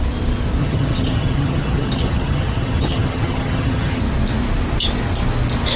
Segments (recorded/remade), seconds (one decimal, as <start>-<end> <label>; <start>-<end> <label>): 0.0-0.6 recorded; 0.6-4.0 remade; 4.0-5.8 recorded

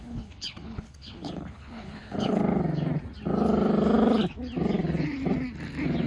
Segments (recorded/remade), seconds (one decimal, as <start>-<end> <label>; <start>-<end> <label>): 0.0-2.4 remade; 2.4-6.1 recorded